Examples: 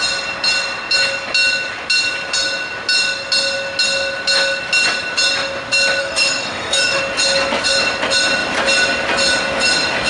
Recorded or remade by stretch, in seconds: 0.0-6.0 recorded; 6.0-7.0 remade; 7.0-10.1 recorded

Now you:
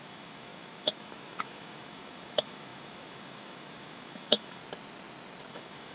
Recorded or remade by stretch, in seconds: 0.0-4.6 remade; 4.6-5.5 recorded; 5.5-5.9 remade

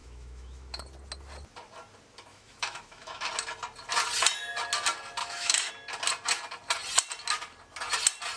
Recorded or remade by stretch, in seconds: 0.0-0.8 remade; 0.8-2.3 recorded; 2.3-3.3 remade; 3.3-5.2 recorded; 5.2-5.7 remade; 5.7-8.4 recorded

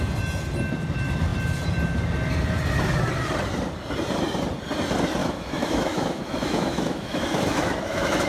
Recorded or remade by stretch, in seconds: 0.0-5.2 recorded; 5.2-8.3 remade

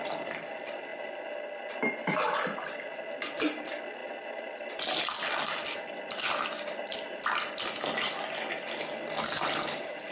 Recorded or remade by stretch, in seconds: 0.0-10.1 recorded

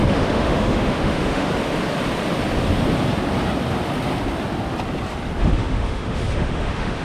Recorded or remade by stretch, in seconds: 0.0-1.5 remade; 1.5-5.4 recorded; 5.4-7.0 remade

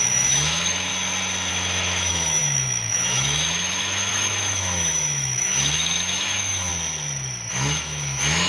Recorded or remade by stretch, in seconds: 0.0-0.9 remade; 0.9-1.5 recorded; 1.5-6.7 remade; 6.7-7.5 recorded; 7.5-8.5 remade

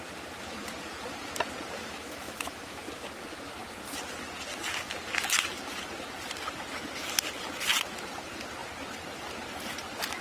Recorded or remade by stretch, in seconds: 0.0-1.8 recorded; 1.8-2.8 remade; 2.8-10.2 recorded